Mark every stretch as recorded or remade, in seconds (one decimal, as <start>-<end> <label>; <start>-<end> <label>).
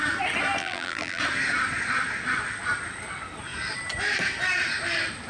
0.0-0.6 recorded; 0.6-1.2 remade; 1.2-5.3 recorded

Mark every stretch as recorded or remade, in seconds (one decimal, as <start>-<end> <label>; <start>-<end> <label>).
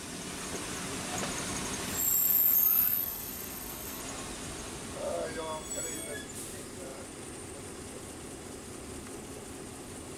0.0-2.8 recorded; 2.8-4.0 remade; 4.0-10.2 recorded